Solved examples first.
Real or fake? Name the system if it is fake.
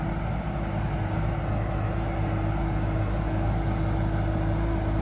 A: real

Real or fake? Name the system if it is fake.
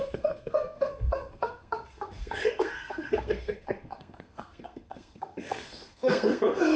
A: fake, codec, SNAC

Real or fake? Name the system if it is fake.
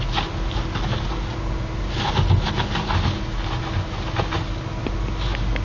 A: real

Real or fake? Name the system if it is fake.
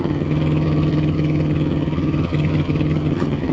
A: fake, vocoder, HiFi-GAN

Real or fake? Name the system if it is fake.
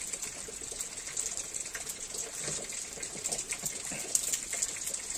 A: real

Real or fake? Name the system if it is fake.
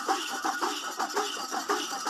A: fake, vocoder, BigVGAN v2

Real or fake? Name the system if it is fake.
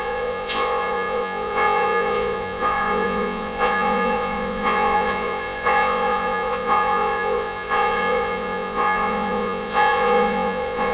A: fake, vocoder, Vocos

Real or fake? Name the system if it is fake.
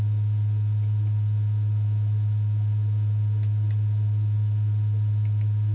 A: real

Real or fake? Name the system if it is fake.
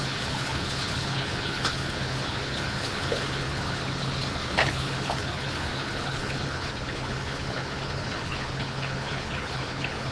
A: fake, codec, HILCodec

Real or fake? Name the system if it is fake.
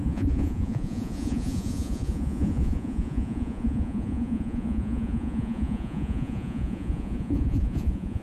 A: fake, vocoder, Vocos